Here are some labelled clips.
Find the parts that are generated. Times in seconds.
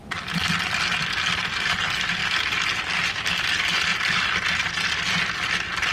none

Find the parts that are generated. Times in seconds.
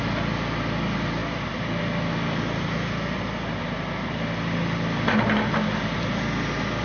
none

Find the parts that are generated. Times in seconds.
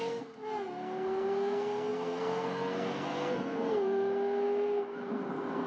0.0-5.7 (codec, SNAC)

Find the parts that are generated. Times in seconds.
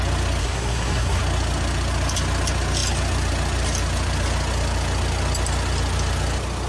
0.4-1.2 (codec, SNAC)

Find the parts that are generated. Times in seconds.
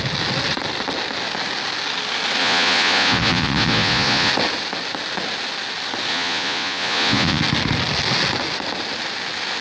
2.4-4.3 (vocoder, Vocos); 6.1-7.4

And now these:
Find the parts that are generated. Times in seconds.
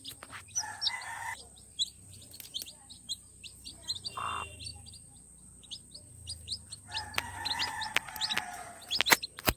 1.1-1.7 (vocoder, BigVGAN v2)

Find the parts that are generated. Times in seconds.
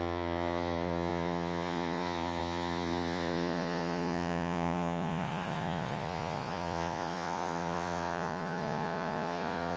0.0-9.8 (vocoder, Vocos)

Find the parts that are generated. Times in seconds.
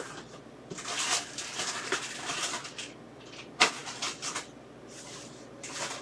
none